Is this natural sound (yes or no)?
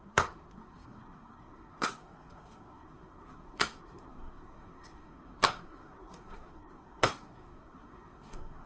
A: no